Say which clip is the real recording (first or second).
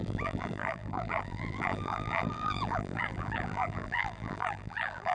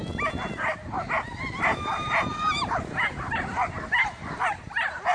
second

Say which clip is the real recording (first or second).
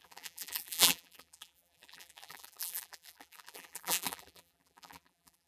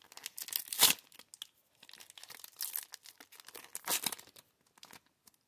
second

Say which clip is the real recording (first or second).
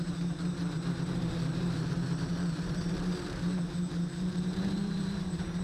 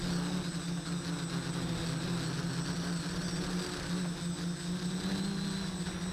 second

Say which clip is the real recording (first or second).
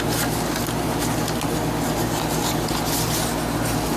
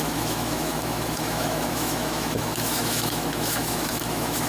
first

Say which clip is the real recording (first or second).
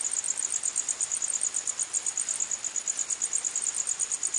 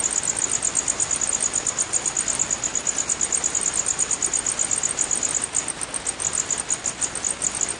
second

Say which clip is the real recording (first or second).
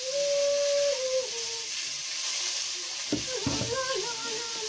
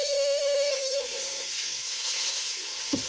first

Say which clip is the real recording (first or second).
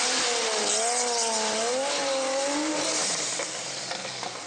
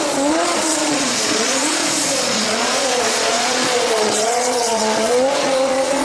first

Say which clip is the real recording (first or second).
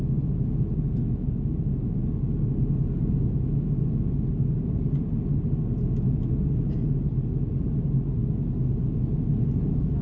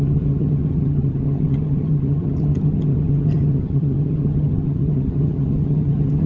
first